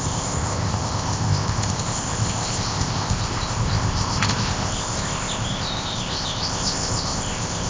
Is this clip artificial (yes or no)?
yes